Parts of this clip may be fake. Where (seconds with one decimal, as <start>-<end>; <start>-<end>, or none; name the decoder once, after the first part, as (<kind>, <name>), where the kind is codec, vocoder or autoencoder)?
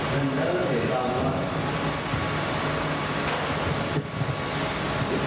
none